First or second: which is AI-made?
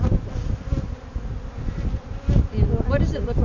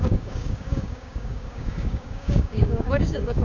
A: second